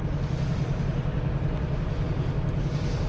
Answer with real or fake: real